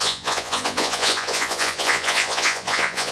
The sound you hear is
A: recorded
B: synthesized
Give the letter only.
B